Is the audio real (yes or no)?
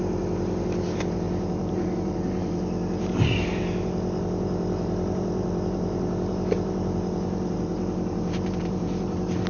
no